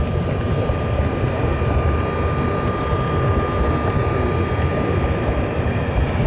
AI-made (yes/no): no